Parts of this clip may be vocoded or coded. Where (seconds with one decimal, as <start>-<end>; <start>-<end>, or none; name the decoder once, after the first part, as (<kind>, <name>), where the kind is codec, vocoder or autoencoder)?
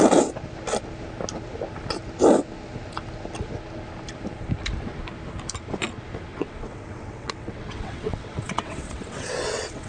6.3-9.9 (vocoder, WaveNeXt)